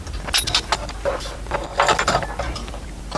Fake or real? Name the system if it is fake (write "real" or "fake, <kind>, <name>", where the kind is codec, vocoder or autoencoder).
real